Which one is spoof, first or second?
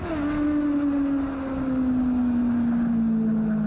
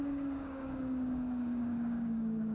second